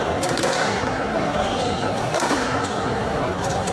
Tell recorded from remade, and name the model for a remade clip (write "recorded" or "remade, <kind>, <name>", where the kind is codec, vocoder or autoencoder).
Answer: remade, codec, SNAC